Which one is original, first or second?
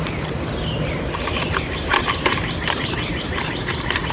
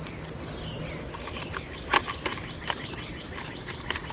second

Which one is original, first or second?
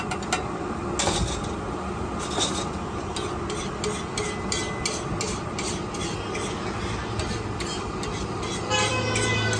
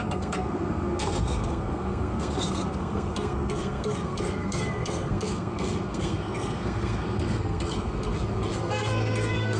first